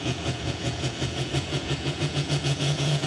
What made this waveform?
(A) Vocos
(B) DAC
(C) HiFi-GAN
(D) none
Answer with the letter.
A